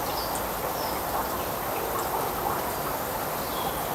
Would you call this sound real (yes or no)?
yes